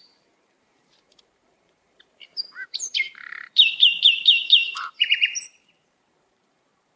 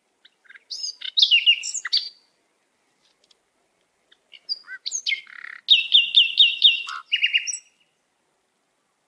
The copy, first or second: first